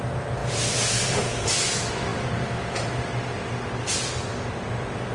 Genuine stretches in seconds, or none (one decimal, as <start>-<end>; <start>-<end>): 0.0-5.1